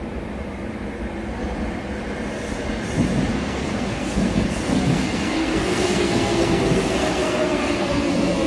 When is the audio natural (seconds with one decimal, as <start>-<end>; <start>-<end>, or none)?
0.0-3.3